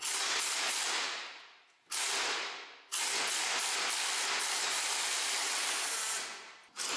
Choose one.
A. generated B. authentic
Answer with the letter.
B